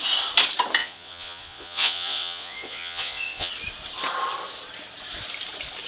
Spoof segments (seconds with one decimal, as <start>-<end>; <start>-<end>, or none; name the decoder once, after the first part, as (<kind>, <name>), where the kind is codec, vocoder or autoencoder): 0.8-3.5 (vocoder, Vocos)

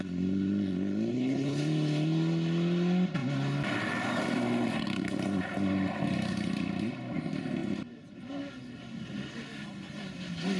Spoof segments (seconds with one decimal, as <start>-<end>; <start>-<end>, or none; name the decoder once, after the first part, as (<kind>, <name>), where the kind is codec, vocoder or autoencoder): 1.1-1.6 (codec, HILCodec)